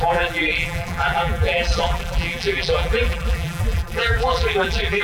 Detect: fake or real fake